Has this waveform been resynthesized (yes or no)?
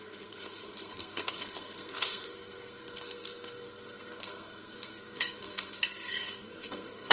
yes